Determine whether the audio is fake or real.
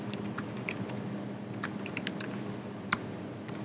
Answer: real